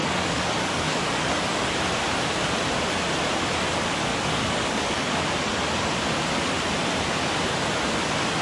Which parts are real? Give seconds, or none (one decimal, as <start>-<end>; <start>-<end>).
1.6-4.1; 5.2-8.4